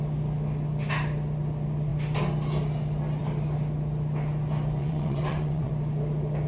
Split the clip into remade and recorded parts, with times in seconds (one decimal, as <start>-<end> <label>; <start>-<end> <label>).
0.0-4.8 recorded; 4.8-5.7 remade; 5.7-6.5 recorded